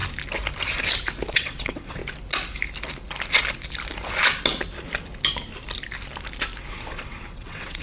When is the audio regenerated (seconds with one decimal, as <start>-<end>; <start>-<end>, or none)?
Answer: 1.3-2.0; 6.7-7.8

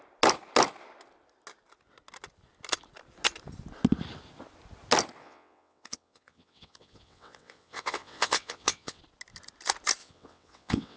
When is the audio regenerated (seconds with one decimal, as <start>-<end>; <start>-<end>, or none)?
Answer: 5.2-9.0; 10.0-11.0

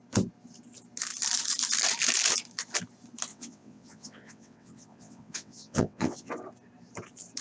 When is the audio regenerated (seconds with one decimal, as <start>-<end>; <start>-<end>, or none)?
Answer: 3.3-6.3